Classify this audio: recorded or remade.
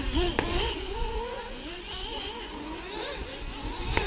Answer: remade